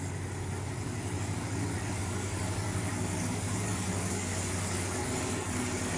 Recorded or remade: remade